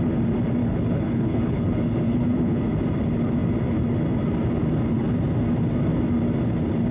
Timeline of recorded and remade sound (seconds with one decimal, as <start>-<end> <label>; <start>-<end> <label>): 0.0-0.6 recorded; 0.6-2.6 remade; 2.6-6.9 recorded

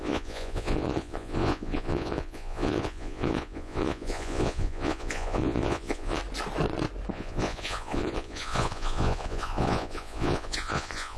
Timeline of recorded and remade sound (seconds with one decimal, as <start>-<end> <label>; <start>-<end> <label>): 0.0-6.2 remade; 6.2-7.1 recorded; 7.1-11.2 remade

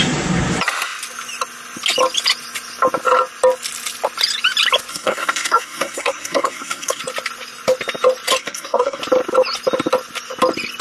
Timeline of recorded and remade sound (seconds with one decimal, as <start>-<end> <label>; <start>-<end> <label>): 0.0-4.9 recorded; 4.9-7.0 remade; 7.0-8.4 recorded; 8.4-9.0 remade; 9.0-10.8 recorded